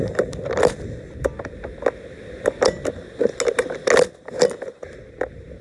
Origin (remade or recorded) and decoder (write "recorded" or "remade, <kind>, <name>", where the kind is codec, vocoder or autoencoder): recorded